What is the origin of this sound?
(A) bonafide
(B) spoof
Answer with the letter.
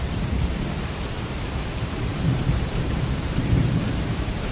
B